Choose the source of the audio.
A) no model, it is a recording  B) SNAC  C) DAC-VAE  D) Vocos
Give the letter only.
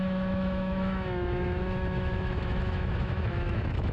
C